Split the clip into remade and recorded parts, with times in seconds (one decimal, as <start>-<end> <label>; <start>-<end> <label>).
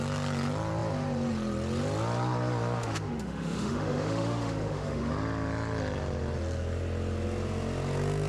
0.0-2.8 recorded; 2.8-5.1 remade; 5.1-8.3 recorded